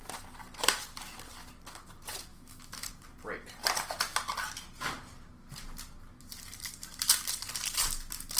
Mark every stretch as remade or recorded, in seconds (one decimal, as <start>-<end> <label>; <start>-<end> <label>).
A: 0.0-2.3 recorded; 2.3-2.9 remade; 2.9-8.4 recorded